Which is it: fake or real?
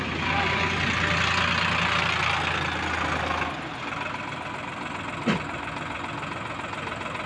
real